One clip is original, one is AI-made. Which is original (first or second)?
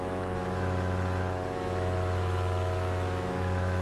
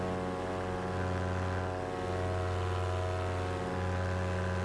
second